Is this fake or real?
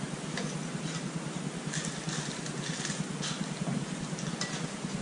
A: real